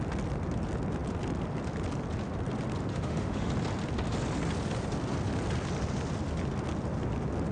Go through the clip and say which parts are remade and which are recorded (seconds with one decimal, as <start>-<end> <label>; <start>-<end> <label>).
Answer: 0.0-2.9 recorded; 2.9-3.5 remade; 3.5-7.5 recorded